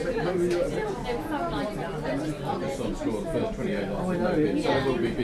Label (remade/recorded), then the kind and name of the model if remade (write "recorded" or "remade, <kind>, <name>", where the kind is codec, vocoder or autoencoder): recorded